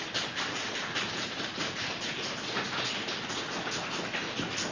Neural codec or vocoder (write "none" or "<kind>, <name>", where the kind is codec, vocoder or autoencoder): none